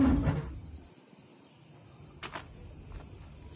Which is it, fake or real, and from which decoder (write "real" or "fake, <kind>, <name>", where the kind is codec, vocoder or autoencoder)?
real